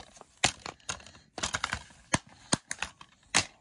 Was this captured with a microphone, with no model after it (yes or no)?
yes